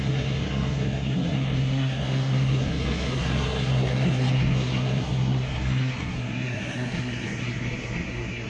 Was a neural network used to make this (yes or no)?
yes